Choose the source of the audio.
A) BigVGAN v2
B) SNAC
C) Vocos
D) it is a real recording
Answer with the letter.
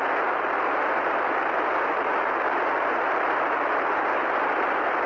D